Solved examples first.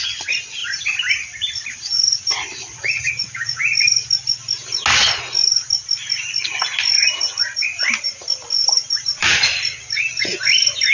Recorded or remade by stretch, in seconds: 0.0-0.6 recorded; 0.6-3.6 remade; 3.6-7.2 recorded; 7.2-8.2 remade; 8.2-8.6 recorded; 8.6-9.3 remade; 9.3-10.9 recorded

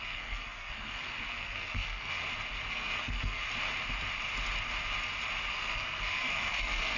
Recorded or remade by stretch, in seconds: 0.0-2.2 remade; 2.2-2.7 recorded; 2.7-3.5 remade; 3.5-5.5 recorded; 5.5-7.0 remade

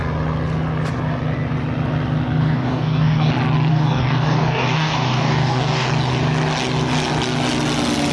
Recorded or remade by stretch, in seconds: 0.0-2.4 recorded; 2.4-3.3 remade; 3.3-3.7 recorded; 3.7-5.9 remade; 5.9-8.1 recorded

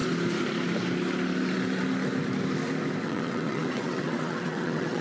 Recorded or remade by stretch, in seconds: 0.0-3.0 recorded; 3.0-5.0 remade